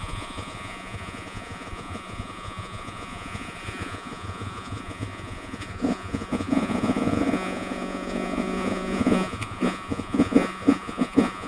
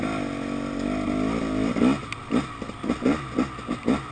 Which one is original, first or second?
second